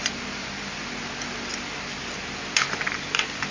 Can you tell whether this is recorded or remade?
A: remade